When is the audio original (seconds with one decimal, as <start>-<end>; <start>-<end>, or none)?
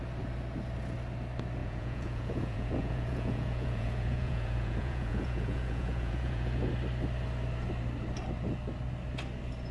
0.0-1.6; 6.7-9.7